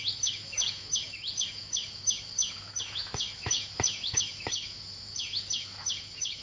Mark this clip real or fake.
fake